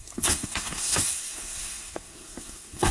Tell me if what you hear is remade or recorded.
remade